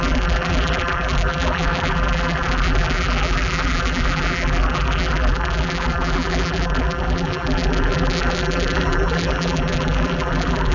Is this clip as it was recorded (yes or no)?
no